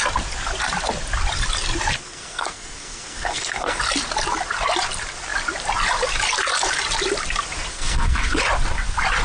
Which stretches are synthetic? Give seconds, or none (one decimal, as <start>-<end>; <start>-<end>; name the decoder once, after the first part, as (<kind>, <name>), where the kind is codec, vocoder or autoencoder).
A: 2.0-3.8 (codec, SNAC); 7.7-8.4